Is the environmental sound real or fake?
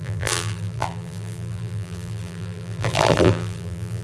fake